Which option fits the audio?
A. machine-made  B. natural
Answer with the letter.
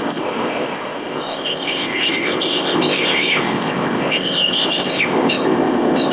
A